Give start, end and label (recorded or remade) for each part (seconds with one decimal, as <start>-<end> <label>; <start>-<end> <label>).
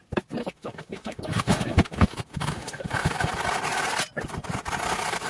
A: 0.0-0.4 recorded; 0.4-3.3 remade; 3.3-5.3 recorded